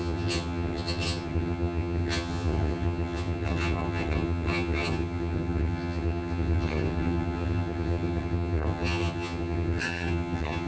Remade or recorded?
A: remade